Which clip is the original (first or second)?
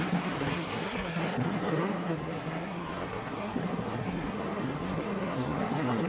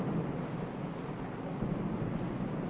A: second